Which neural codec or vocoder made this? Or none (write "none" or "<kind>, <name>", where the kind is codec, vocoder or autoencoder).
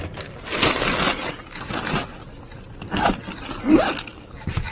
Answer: none